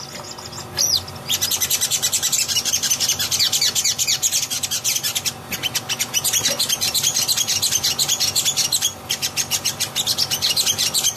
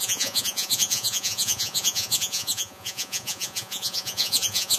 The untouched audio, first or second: first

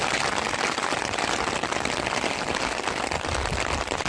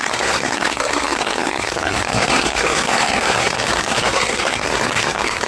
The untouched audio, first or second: first